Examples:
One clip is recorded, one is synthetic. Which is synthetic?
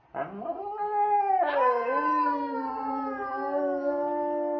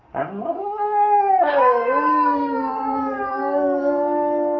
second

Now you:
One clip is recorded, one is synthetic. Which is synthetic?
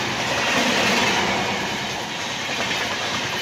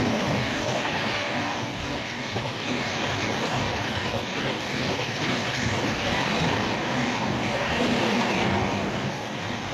second